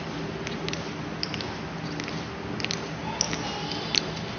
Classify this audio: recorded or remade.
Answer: recorded